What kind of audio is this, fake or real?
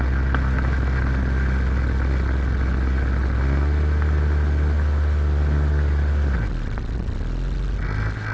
real